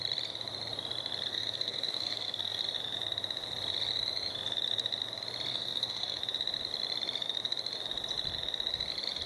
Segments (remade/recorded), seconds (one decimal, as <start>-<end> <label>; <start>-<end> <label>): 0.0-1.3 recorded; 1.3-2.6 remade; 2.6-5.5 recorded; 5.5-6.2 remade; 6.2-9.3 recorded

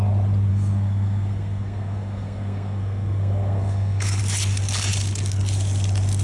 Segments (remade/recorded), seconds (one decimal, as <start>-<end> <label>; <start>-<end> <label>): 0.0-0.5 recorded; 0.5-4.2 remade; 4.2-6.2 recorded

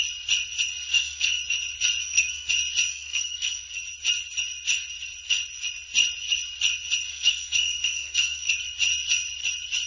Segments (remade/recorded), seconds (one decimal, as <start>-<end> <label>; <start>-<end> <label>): 0.0-0.9 recorded; 0.9-1.4 remade; 1.4-2.0 recorded; 2.0-2.5 remade; 2.5-2.9 recorded; 2.9-3.6 remade; 3.6-7.1 recorded; 7.1-8.5 remade; 8.5-9.9 recorded

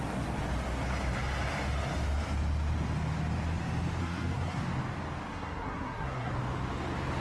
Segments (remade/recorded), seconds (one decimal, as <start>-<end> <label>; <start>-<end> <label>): 0.0-4.0 recorded; 4.0-4.6 remade; 4.6-5.3 recorded; 5.3-6.3 remade; 6.3-7.2 recorded

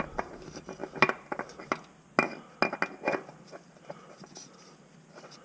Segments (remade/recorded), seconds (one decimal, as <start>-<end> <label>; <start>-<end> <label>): 0.0-5.4 recorded

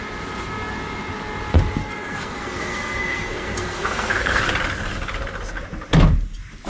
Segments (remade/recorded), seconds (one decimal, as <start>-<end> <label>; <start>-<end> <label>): 0.0-1.8 recorded; 1.8-4.4 remade; 4.4-6.7 recorded

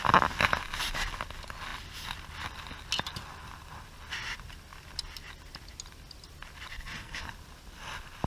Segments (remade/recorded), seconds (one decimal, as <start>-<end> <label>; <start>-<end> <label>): 0.0-6.7 recorded; 6.7-7.3 remade; 7.3-8.3 recorded